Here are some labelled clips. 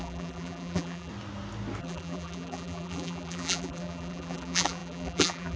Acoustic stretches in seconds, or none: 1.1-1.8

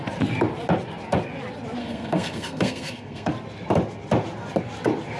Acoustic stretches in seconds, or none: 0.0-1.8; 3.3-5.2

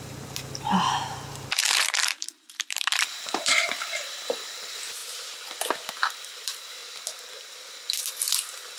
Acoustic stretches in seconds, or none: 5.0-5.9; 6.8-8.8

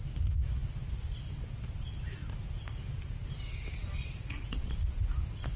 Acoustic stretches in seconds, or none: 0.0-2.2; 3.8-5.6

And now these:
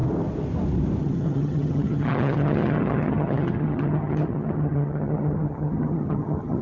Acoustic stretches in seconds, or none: 0.0-1.0

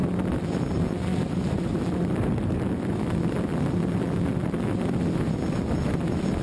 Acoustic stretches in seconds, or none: 0.0-1.1; 3.0-6.4